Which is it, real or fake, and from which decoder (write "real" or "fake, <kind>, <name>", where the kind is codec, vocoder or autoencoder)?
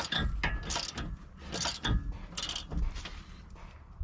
real